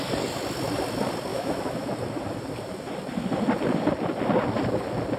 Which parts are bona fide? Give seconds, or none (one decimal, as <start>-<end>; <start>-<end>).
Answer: 0.0-1.3; 1.9-5.2